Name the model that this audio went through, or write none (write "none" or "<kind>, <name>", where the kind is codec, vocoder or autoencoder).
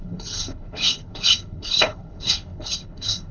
codec, HILCodec